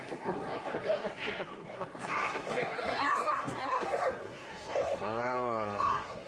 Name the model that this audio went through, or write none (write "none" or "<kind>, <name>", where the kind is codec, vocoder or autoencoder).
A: codec, SNAC